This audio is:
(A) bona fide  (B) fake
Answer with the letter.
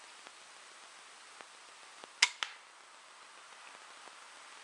A